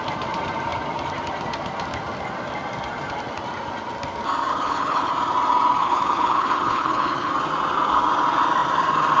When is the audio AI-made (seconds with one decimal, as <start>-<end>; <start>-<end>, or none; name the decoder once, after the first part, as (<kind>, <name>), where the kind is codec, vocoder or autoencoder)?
4.5-5.1 (codec, HILCodec); 5.8-7.3